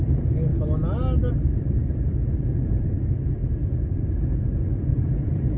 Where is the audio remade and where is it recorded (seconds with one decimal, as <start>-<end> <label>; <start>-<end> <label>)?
0.0-0.5 remade; 0.5-1.3 recorded; 1.3-3.6 remade; 3.6-4.6 recorded; 4.6-5.6 remade